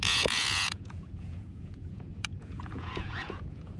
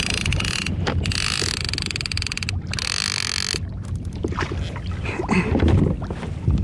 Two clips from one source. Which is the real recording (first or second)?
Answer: second